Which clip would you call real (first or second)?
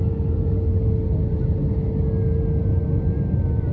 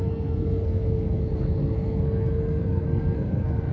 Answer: first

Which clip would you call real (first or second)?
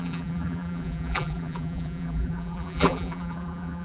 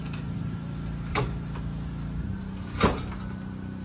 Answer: second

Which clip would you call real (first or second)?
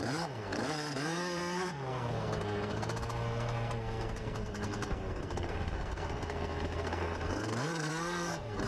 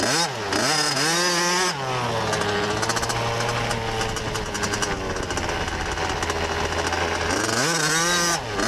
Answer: second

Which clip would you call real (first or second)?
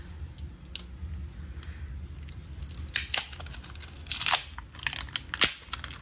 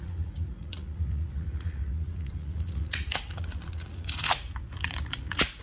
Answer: first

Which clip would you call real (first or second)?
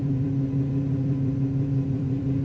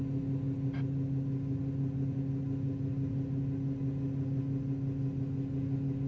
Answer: second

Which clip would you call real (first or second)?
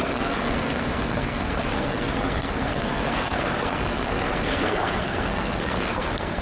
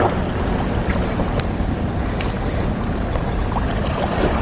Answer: second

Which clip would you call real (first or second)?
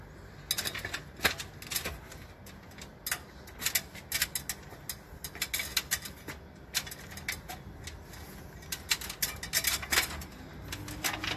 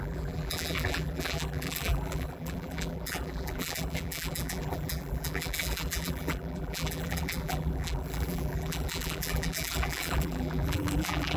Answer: first